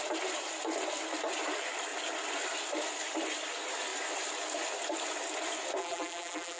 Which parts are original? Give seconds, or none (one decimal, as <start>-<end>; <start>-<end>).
0.0-5.8